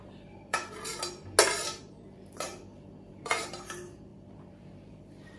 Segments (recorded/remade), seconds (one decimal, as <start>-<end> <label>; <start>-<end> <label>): 0.0-0.9 remade; 0.9-1.8 recorded; 1.8-2.5 remade; 2.5-3.1 recorded; 3.1-5.4 remade